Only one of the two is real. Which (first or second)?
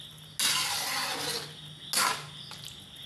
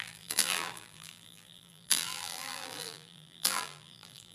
first